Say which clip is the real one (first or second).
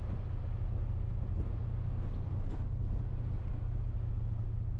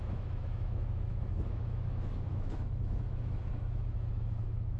first